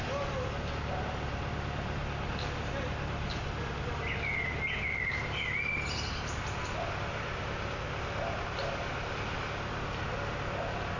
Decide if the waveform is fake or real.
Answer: real